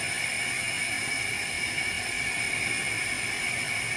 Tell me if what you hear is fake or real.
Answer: real